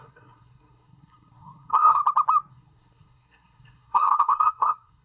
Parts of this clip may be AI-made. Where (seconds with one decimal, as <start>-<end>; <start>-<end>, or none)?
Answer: 0.0-2.0; 2.5-5.0